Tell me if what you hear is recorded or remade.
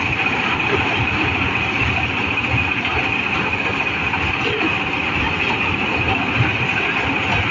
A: recorded